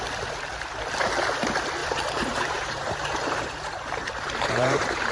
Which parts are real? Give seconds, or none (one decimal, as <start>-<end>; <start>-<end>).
0.0-1.8

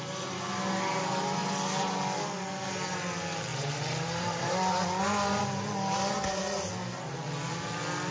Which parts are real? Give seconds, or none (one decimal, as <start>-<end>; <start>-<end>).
0.0-3.5; 4.5-6.1; 6.7-8.1

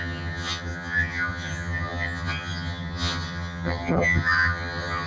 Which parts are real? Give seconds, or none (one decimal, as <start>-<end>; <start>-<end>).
none

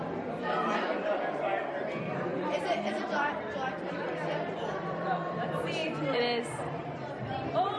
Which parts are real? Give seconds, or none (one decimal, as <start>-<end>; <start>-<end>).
none

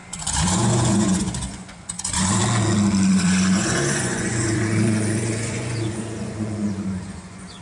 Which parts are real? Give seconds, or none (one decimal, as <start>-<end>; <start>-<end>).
2.4-3.1